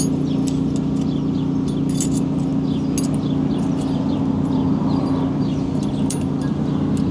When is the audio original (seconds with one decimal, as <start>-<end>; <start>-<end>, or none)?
0.0-7.1